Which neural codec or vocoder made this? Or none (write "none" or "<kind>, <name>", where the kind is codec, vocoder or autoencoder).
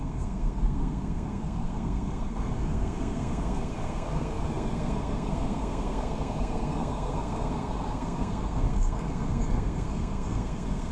codec, SNAC